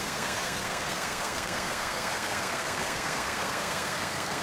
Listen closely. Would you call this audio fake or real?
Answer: fake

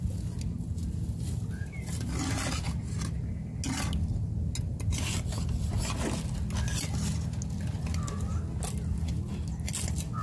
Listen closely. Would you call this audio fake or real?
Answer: real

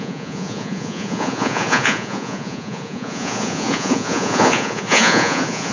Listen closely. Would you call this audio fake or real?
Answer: fake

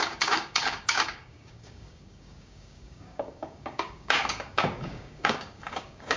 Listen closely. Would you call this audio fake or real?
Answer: fake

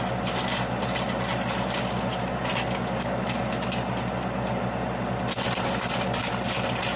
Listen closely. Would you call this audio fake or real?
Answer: real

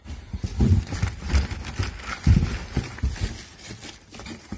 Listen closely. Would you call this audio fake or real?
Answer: real